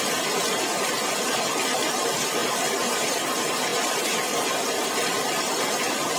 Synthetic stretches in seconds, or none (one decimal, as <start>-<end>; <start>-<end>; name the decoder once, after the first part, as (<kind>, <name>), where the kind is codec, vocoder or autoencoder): 2.4-3.2 (vocoder, BigVGAN v2)